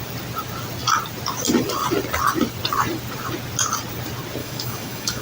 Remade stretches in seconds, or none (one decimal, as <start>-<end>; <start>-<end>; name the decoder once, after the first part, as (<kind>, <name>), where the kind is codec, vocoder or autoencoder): 4.4-5.2 (autoencoder, DAC-VAE)